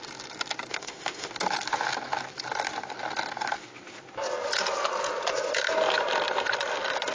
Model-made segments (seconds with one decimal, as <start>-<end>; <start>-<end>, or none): 0.7-1.3